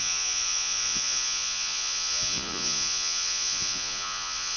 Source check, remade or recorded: remade